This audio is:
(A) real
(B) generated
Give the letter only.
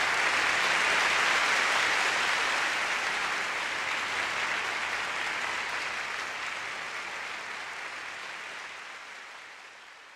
A